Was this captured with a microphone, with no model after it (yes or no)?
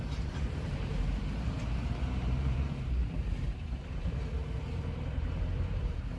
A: no